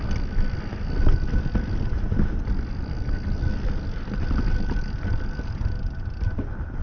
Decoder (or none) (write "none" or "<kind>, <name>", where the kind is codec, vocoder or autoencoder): none